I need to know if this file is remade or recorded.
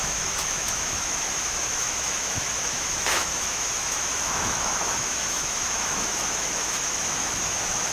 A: remade